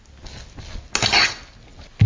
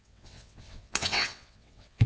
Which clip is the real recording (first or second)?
first